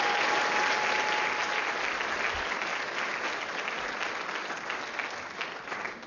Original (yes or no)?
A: yes